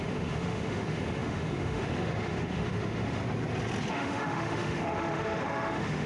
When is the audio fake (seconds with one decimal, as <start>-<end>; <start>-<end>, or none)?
0.0-3.2; 3.9-6.1